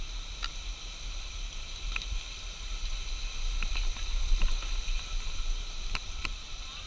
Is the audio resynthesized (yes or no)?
no